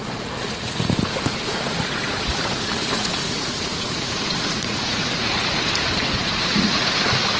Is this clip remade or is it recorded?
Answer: remade